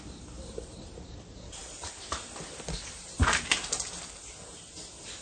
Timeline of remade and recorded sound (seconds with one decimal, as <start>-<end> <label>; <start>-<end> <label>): 0.0-5.2 recorded